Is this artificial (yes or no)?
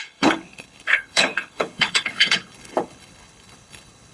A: yes